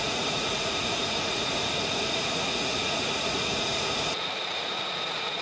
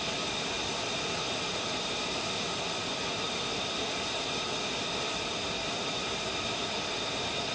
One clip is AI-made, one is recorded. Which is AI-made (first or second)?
first